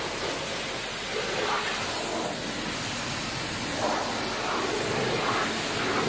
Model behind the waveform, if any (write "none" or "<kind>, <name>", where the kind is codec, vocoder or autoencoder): none